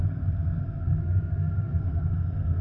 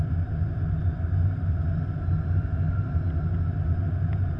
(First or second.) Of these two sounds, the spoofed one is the first